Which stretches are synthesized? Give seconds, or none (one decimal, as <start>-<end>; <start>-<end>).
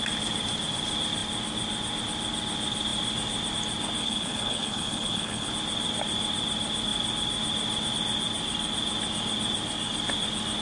4.0-5.5